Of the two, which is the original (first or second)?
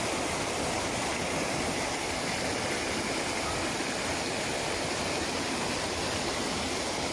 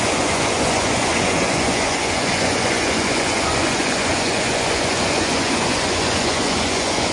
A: first